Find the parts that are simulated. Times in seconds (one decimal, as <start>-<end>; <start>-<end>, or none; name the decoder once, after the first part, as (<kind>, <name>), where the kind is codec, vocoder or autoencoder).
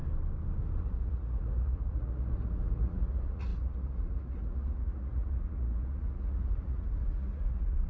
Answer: 0.8-7.9 (vocoder, Vocos)